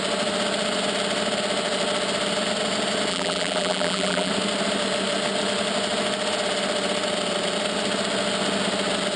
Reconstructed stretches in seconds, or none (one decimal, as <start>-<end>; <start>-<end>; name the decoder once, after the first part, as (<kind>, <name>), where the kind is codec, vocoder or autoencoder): 3.1-4.3 (vocoder, BigVGAN v2)